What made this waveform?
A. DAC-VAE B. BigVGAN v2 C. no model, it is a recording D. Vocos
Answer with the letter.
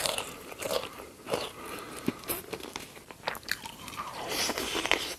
B